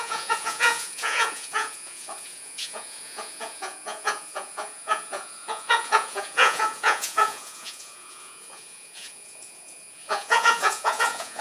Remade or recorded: remade